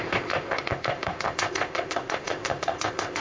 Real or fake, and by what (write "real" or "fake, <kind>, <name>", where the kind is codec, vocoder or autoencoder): fake, codec, ZipCodec